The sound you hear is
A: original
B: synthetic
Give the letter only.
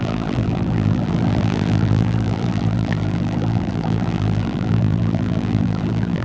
B